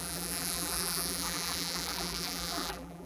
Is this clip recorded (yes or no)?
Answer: no